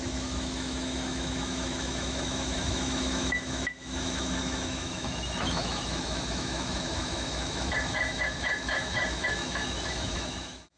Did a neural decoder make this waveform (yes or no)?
yes